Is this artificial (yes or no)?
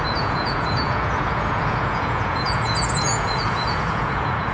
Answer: yes